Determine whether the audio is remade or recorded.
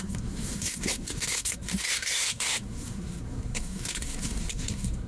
remade